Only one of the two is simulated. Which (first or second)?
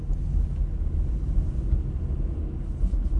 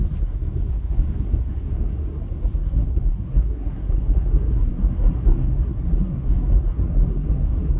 second